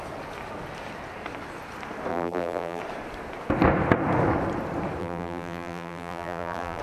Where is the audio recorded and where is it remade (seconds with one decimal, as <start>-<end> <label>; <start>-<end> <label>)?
0.0-2.1 recorded; 2.1-2.8 remade; 2.8-5.0 recorded; 5.0-6.8 remade